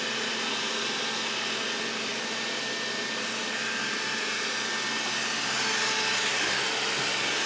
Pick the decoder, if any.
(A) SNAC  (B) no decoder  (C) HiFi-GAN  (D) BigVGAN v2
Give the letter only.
B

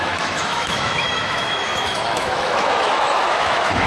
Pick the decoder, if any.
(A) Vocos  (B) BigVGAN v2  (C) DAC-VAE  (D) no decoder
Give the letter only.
C